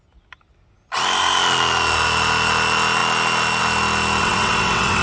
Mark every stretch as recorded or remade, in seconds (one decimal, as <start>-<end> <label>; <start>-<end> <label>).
0.0-4.2 recorded; 4.2-5.0 remade